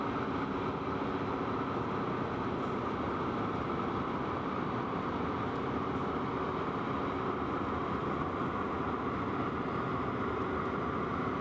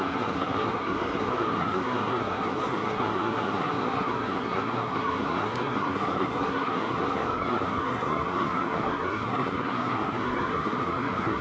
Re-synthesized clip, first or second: second